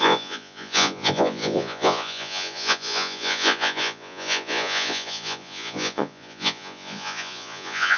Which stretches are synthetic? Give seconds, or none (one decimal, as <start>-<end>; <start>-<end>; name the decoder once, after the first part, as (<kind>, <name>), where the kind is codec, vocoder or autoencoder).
0.0-8.0 (vocoder, Vocos)